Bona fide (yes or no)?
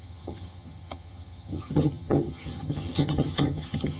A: no